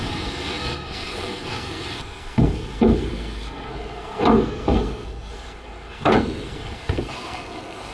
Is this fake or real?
fake